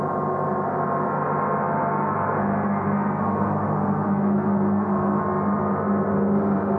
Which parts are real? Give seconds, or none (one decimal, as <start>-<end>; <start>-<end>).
0.0-1.9; 5.2-6.8